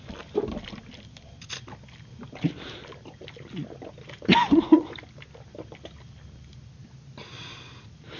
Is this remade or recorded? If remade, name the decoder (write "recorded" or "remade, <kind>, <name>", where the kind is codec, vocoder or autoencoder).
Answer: recorded